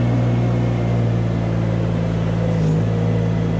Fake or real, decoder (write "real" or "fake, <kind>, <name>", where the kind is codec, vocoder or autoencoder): real